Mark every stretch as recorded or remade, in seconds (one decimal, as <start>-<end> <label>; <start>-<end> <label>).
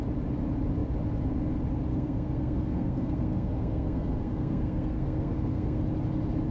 0.0-1.9 recorded; 1.9-5.8 remade; 5.8-6.5 recorded